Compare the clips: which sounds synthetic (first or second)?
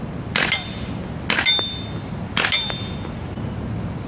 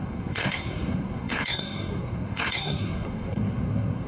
second